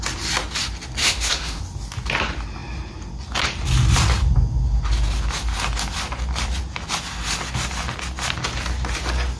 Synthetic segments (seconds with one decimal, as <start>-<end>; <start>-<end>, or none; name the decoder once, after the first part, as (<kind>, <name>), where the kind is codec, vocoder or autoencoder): 1.0-1.6 (autoencoder, DAC-VAE)